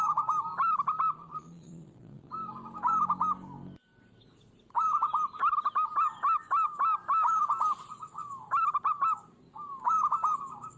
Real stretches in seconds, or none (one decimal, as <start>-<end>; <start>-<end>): 0.0-1.2; 2.3-10.8